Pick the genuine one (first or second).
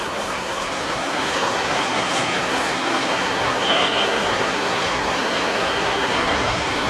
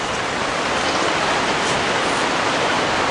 second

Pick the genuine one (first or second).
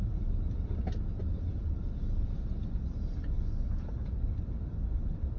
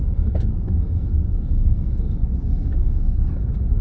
first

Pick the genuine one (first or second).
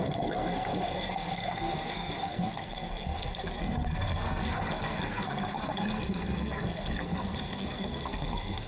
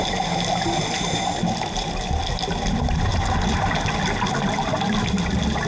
second